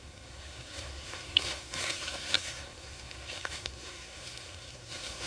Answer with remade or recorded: remade